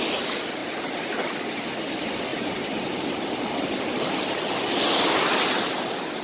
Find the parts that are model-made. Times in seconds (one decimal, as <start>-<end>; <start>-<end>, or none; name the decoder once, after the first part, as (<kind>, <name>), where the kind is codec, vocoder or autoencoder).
none